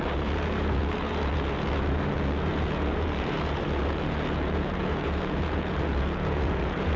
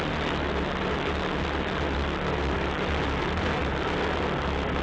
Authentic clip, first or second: second